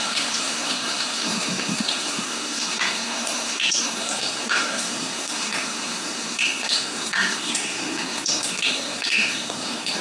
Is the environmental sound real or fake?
fake